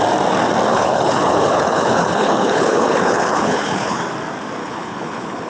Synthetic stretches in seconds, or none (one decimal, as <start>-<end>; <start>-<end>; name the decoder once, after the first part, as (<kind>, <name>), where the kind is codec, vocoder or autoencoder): 0.7-4.0 (codec, HILCodec); 4.6-5.5